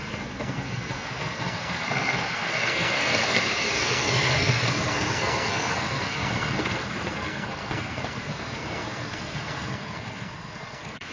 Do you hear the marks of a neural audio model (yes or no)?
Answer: yes